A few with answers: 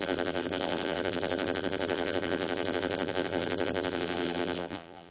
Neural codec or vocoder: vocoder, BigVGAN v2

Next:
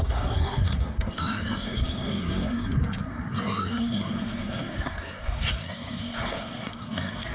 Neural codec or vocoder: codec, SNAC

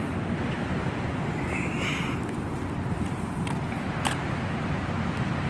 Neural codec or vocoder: none